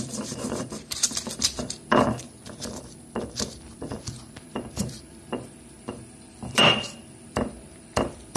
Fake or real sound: fake